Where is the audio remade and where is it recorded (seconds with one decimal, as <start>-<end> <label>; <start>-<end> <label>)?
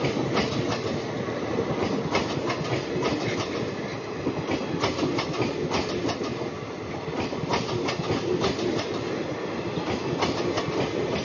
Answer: 0.0-11.2 recorded